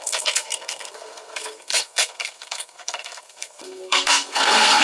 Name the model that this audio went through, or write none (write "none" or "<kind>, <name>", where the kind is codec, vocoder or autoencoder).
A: codec, SNAC